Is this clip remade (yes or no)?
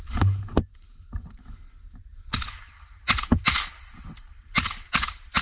no